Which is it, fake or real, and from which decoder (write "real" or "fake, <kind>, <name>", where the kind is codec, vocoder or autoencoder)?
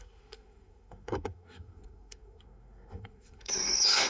fake, codec, SNAC